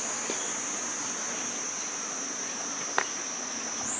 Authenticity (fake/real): real